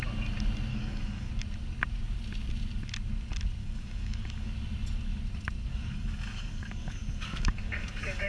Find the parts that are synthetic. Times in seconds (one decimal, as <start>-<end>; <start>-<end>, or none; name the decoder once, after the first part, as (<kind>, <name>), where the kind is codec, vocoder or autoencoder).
0.7-1.3 (codec, DAC); 3.6-4.5; 5.7-8.3